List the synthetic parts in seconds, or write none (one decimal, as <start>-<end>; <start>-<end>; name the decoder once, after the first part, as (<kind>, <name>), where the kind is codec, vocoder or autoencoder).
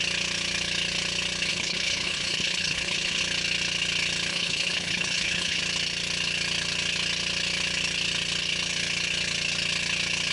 1.5-3.2 (codec, HILCodec); 4.3-5.6